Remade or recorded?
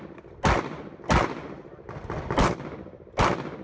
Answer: recorded